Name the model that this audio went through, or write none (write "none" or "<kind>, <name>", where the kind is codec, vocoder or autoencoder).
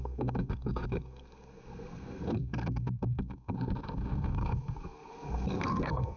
codec, SNAC